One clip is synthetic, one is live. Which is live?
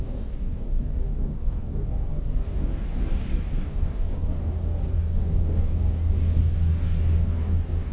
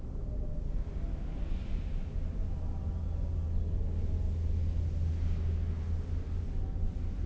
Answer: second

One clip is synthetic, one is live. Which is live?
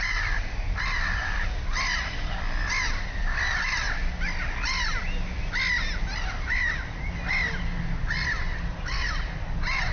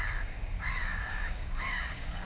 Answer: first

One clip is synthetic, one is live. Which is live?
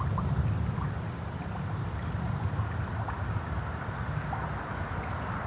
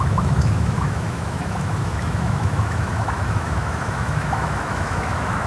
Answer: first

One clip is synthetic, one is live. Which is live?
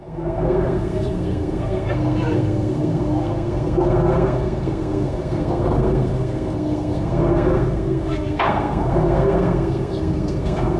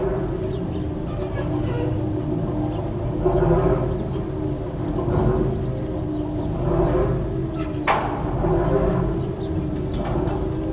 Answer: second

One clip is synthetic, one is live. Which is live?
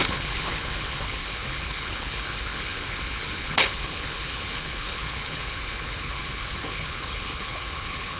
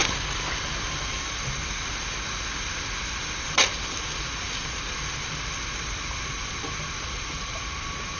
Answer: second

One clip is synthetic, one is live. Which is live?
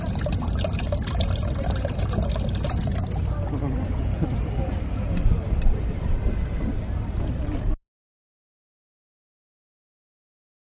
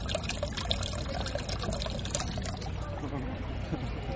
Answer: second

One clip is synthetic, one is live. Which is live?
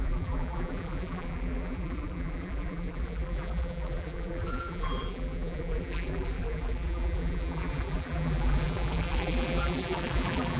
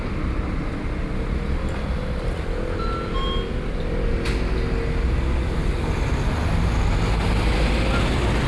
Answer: second